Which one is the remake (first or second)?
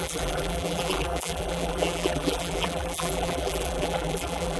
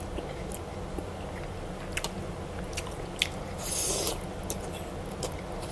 first